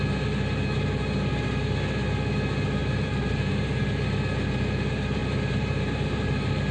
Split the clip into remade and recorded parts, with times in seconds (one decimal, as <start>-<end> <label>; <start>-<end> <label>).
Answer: 0.0-2.8 recorded; 2.8-3.8 remade; 3.8-5.2 recorded; 5.2-6.7 remade